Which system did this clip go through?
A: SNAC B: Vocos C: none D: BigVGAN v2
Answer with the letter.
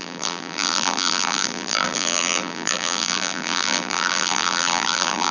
D